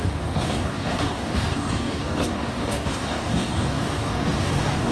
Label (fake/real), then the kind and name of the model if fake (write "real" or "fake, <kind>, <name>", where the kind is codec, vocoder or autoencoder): fake, codec, DAC